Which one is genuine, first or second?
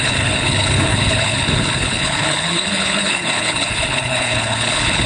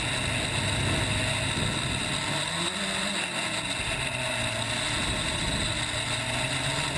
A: second